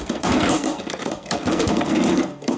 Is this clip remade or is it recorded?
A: remade